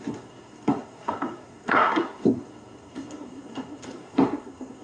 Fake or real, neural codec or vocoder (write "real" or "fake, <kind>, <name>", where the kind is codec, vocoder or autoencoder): fake, codec, SNAC